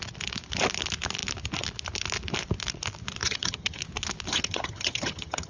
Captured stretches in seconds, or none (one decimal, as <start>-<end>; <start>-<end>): 0.0-3.2; 3.8-4.3